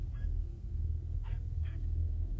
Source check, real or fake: fake